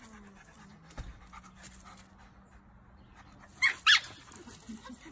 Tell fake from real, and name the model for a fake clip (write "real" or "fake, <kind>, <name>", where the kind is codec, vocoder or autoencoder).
real